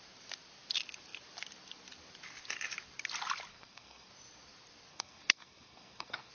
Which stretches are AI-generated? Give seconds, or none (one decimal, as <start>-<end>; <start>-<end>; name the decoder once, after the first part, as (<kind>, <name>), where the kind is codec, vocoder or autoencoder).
3.5-4.1 (codec, SNAC); 4.9-6.3